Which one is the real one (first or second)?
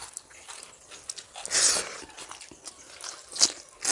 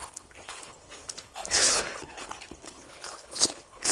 first